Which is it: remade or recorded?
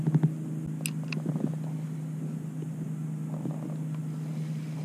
recorded